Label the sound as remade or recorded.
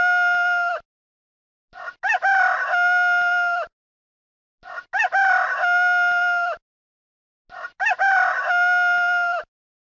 recorded